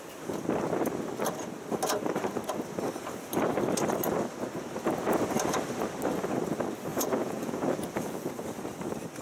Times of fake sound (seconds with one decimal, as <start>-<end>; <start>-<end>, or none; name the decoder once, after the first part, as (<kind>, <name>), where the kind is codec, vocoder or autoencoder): 6.9-8.3 (vocoder, Vocos)